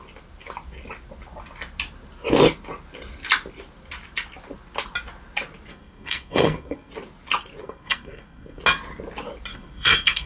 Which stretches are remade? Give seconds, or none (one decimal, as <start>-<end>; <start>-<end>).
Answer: 5.7-6.9; 7.6-8.6; 9.5-10.3